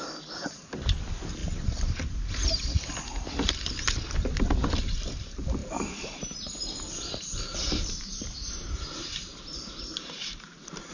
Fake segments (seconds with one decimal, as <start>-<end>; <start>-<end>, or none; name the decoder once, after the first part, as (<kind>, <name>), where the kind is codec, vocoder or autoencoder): 1.4-2.1 (vocoder, BigVGAN v2); 5.6-10.9